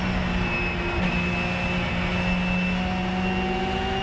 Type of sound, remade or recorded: recorded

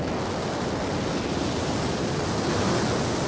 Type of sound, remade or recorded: recorded